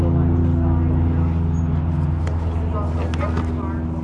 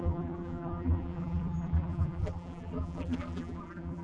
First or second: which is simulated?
second